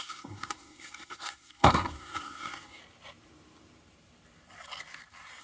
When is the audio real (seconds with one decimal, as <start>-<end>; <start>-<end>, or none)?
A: 2.8-5.4